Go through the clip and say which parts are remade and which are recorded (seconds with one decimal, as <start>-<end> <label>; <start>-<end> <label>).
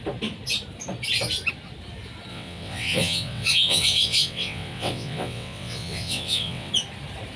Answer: 0.0-2.3 recorded; 2.3-6.7 remade; 6.7-7.4 recorded